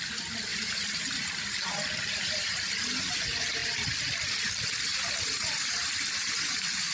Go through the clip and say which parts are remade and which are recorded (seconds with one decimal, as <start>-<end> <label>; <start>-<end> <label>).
0.0-0.5 recorded; 0.5-3.2 remade; 3.2-4.9 recorded; 4.9-6.9 remade